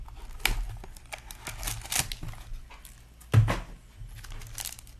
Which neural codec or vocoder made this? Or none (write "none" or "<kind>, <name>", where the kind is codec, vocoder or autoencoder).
none